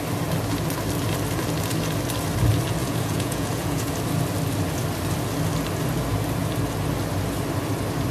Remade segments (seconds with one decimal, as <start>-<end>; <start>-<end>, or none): 2.8-3.9

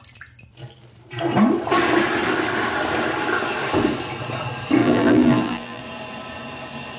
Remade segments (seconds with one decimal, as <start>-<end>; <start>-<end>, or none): 4.8-5.8

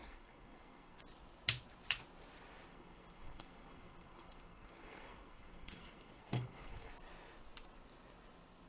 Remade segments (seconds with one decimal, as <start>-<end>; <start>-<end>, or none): 0.0-1.0; 2.7-6.9

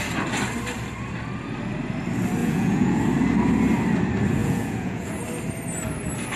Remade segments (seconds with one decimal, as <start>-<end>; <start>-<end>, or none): 2.4-3.0; 4.4-5.2

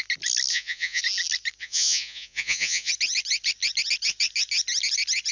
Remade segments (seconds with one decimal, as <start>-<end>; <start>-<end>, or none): 0.5-1.0; 1.6-2.9

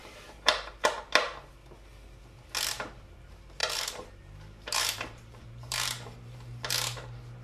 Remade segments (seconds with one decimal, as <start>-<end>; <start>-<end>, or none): 0.0-0.7; 3.6-6.7

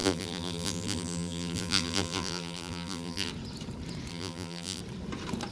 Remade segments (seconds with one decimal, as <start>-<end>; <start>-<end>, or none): 0.0-3.3; 4.1-4.8